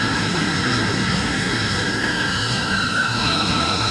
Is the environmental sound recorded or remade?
remade